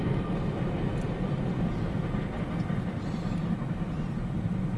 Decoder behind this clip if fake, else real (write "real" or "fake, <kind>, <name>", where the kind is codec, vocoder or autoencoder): real